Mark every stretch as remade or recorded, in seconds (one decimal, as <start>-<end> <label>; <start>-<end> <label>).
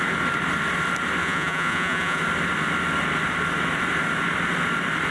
0.0-1.2 recorded; 1.2-2.2 remade; 2.2-5.1 recorded